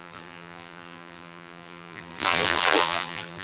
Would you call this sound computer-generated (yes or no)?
yes